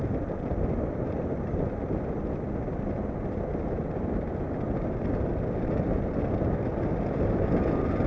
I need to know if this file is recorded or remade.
recorded